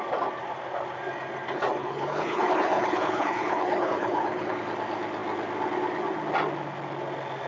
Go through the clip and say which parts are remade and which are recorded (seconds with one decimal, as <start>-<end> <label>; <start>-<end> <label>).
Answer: 0.0-1.8 recorded; 1.8-4.6 remade; 4.6-7.5 recorded